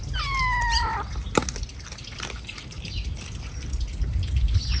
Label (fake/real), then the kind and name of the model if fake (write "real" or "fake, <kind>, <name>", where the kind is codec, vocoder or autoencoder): real